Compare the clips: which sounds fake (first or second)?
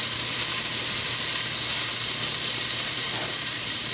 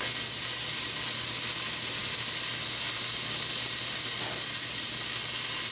first